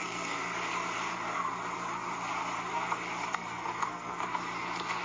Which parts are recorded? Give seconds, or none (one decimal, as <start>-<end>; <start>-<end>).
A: 0.4-3.3; 4.2-5.0